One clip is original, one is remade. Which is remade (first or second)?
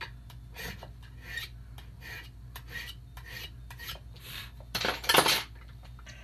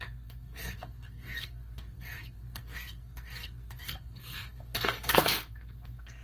second